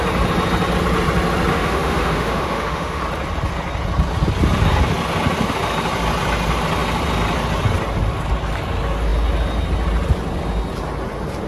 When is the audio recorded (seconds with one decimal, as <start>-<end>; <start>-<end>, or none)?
0.0-1.5; 3.0-11.5